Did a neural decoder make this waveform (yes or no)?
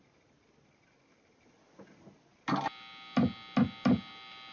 no